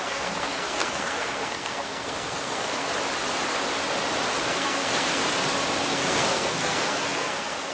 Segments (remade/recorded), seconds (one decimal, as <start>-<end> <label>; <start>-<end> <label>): 0.0-2.9 remade; 2.9-4.4 recorded; 4.4-5.2 remade; 5.2-5.9 recorded; 5.9-7.7 remade